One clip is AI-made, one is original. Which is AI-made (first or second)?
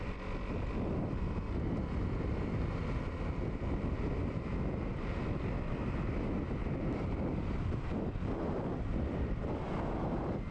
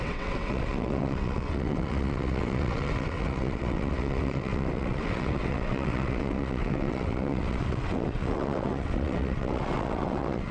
second